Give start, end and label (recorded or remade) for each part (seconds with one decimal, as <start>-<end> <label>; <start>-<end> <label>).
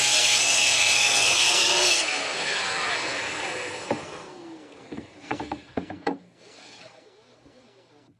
0.0-8.2 remade